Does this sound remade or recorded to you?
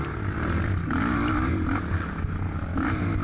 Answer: recorded